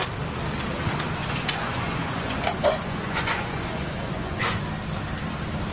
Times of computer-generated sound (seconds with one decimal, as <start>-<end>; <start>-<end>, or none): 1.2-4.6